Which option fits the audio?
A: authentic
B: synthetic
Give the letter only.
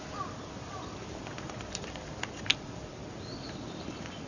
A